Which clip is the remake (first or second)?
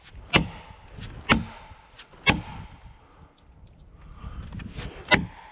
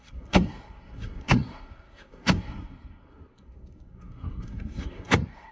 second